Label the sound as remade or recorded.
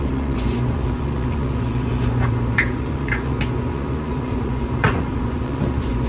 remade